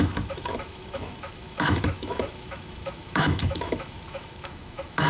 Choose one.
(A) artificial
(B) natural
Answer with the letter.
A